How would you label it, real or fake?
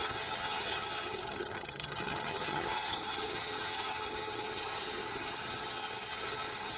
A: fake